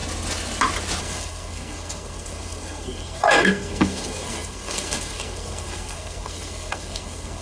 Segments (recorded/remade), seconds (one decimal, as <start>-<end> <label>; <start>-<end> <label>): 0.0-1.0 recorded; 1.0-7.4 remade